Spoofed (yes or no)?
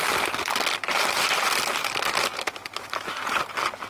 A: no